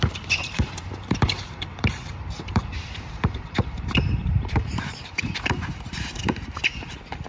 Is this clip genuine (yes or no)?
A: no